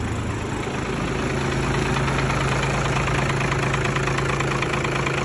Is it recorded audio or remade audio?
recorded